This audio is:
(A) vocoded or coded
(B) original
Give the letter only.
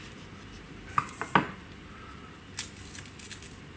B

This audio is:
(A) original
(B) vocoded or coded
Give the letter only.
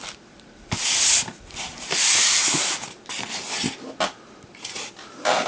A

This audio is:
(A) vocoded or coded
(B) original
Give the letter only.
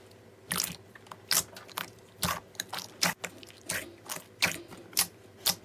B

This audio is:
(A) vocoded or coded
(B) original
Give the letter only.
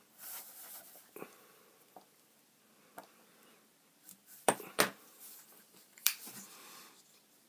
A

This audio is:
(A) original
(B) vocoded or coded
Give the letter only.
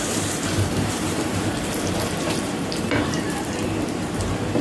B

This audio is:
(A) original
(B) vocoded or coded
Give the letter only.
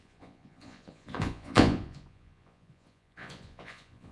B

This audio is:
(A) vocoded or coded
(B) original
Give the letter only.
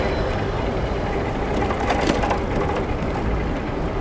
B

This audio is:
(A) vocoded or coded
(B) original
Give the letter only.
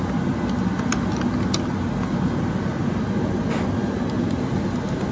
B